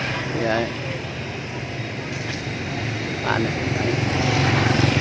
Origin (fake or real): real